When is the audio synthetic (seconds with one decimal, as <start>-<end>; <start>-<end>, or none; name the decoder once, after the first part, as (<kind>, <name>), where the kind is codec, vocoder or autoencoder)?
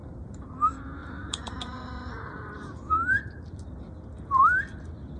0.0-0.5 (vocoder, BigVGAN v2); 1.0-3.3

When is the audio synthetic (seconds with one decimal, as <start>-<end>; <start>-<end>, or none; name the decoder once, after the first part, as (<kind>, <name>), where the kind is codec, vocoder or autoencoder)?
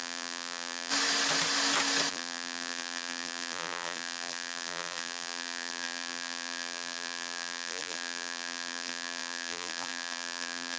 0.0-0.9 (vocoder, BigVGAN v2); 2.1-10.8